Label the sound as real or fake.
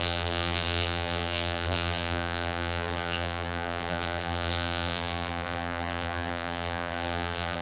fake